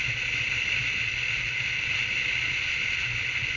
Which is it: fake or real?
real